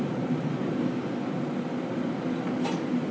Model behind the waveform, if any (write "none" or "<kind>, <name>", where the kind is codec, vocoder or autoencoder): none